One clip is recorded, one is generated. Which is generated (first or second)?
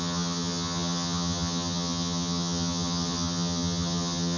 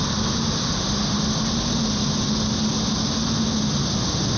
first